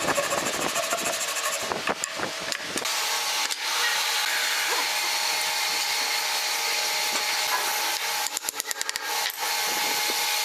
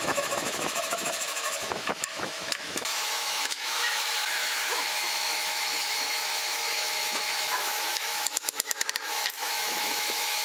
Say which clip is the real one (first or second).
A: first